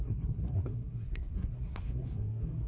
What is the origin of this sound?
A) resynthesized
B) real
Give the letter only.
A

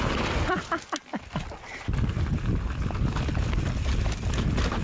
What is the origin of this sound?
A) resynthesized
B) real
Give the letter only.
B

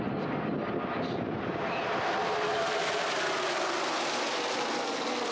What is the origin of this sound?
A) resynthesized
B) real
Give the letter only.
B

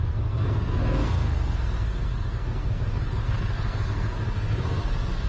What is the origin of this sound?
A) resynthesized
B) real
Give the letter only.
A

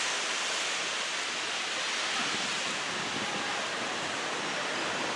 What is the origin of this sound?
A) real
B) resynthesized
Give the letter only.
A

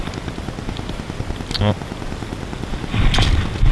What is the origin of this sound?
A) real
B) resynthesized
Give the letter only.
A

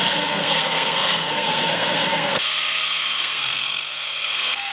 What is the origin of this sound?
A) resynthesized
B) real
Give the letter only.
A